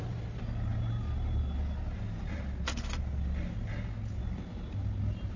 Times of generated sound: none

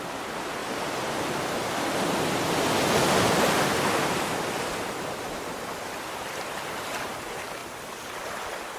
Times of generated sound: none

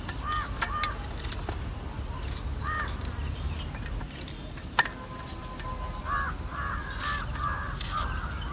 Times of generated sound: none

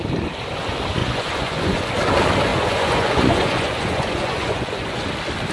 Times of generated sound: 1.0-1.9 (vocoder, Vocos); 2.5-5.1

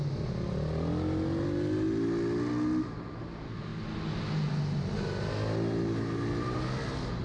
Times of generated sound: none